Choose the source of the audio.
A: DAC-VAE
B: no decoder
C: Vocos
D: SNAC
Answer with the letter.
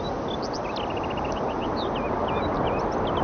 B